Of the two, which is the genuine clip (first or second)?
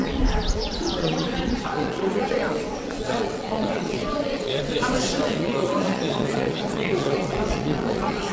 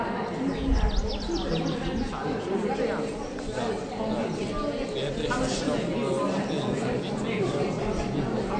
second